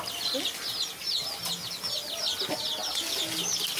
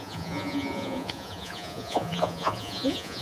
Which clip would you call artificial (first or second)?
second